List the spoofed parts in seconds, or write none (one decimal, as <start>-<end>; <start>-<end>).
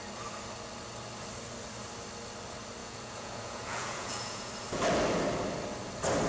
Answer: 2.8-4.5